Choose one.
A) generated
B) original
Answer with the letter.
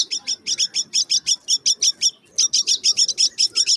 B